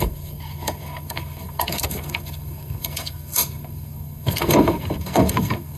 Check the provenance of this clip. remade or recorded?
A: remade